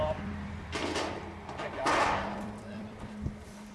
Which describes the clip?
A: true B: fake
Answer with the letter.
B